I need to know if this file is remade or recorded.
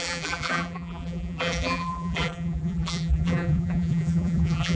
remade